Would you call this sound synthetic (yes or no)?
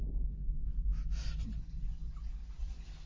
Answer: no